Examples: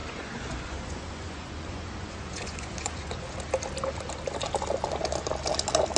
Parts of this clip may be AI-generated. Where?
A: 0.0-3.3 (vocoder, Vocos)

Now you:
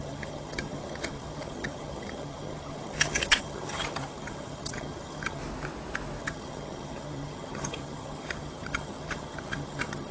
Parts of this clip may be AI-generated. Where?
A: 0.0-5.4 (vocoder, HiFi-GAN); 6.2-10.1

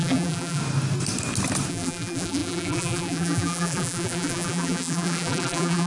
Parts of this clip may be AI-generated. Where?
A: 0.0-0.6 (vocoder, BigVGAN v2); 1.7-5.9

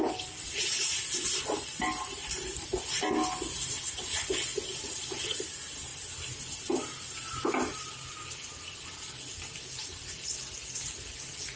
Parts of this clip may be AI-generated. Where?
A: none

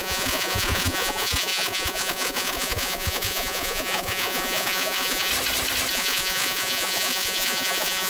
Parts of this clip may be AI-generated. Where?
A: 0.0-5.3 (vocoder, Vocos); 5.9-8.1